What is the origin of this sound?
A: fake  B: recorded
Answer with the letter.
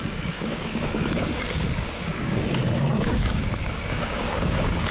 A